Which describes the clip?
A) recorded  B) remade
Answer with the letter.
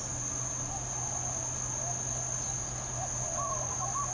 A